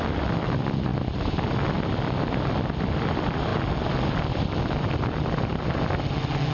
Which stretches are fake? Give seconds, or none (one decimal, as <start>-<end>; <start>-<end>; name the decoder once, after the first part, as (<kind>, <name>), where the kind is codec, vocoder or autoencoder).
0.0-3.5 (vocoder, BigVGAN v2)